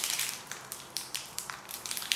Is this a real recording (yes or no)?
no